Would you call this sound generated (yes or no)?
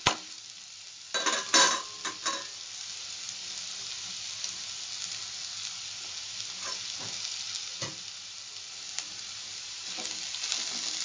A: no